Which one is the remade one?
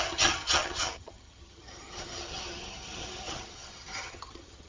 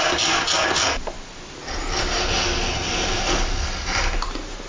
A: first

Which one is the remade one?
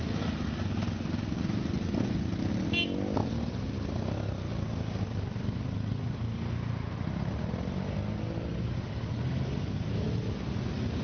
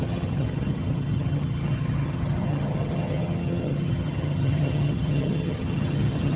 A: second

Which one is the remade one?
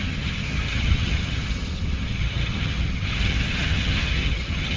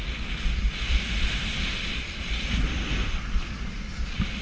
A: first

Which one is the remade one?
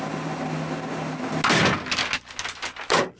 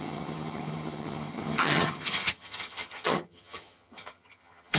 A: second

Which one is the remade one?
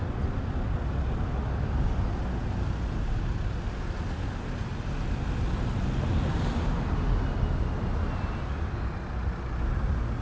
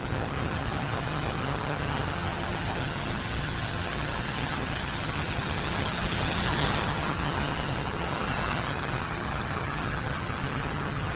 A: second